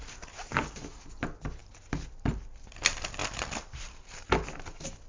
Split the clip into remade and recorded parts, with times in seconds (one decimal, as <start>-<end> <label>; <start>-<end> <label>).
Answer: 0.0-3.2 recorded; 3.2-4.3 remade; 4.3-5.1 recorded